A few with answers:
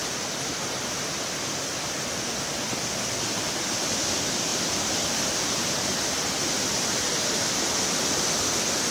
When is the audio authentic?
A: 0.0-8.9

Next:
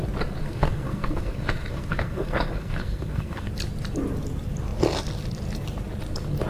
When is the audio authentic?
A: 0.0-0.4; 3.5-6.5

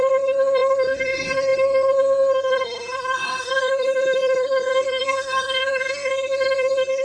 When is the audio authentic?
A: none

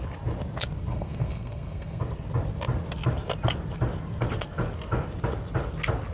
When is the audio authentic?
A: 0.0-0.9; 2.0-6.1

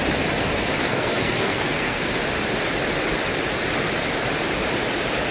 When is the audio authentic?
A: 0.0-0.8; 2.1-5.3

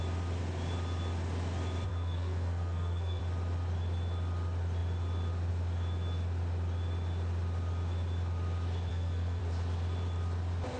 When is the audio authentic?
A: 0.0-1.9; 3.2-8.9; 9.4-10.8

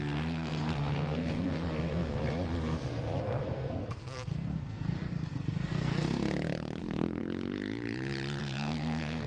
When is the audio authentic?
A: 2.2-3.2; 5.9-6.8; 7.2-8.4